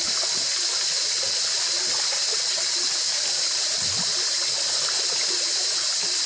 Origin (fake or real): real